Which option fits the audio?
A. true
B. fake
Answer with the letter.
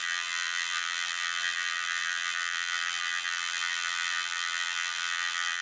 B